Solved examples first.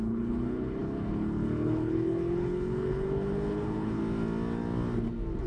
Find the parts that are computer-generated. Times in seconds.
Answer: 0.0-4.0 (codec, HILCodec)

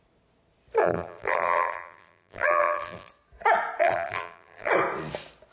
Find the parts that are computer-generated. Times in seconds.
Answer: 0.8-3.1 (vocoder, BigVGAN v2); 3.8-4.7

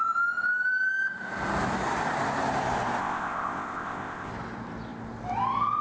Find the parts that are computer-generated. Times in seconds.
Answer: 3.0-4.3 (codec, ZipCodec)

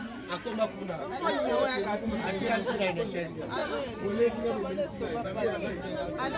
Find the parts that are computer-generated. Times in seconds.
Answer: none

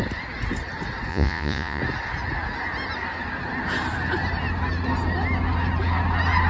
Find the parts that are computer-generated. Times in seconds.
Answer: 1.1-1.8 (vocoder, Vocos)

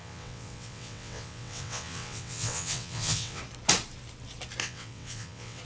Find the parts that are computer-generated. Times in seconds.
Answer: 0.0-3.4 (vocoder, WaveNeXt); 4.6-5.6

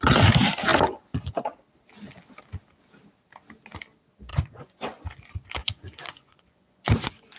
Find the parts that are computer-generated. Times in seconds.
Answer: 4.3-5.0 (vocoder, Vocos); 5.6-7.4

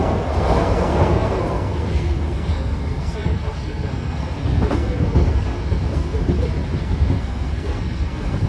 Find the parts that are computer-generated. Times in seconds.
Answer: 0.0-6.2 (codec, SNAC); 6.8-8.5